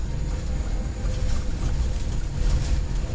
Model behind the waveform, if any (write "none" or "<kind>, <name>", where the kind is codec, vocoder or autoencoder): none